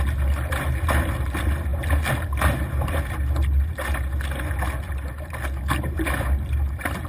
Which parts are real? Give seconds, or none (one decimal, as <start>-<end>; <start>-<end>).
0.0-7.1

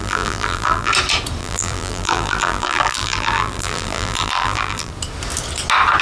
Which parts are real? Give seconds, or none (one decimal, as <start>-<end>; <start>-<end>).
0.9-1.4; 4.9-6.0